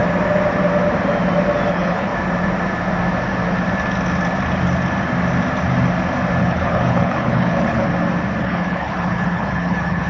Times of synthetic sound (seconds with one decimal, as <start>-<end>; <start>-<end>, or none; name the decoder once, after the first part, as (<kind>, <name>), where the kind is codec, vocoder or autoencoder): 1.7-2.1 (codec, HILCodec); 6.4-7.9; 8.4-10.1